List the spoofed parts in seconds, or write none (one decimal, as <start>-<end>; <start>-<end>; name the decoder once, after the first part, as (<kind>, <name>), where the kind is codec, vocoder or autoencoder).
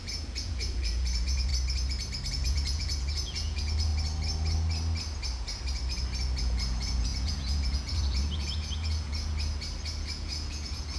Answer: 0.0-1.5 (vocoder, Vocos); 2.3-3.9; 6.4-9.3; 10.0-11.0